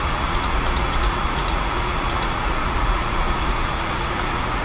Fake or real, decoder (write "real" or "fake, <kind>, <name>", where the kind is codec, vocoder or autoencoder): fake, vocoder, Vocos